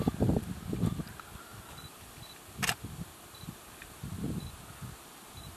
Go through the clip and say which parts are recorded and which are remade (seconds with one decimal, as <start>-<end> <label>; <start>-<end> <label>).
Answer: 0.0-5.6 recorded